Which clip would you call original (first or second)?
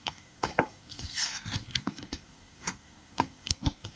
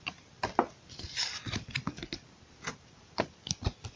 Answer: second